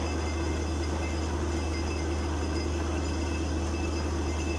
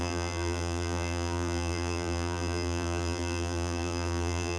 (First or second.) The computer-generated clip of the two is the second